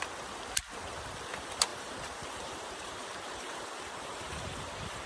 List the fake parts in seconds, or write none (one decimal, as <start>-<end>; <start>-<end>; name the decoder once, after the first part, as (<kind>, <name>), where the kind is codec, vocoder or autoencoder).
1.7-5.1 (vocoder, BigVGAN v2)

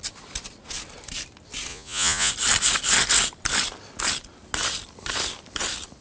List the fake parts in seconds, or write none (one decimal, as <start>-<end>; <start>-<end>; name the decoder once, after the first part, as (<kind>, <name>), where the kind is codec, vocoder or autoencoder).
1.7-2.3 (vocoder, Vocos)